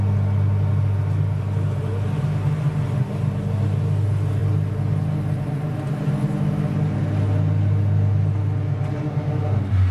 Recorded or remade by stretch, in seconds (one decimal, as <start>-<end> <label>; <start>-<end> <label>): 0.0-9.9 recorded